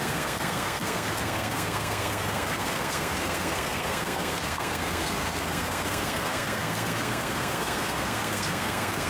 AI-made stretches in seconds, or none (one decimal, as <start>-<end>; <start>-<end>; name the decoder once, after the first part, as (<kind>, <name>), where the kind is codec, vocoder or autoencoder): 0.0-9.1 (codec, SNAC)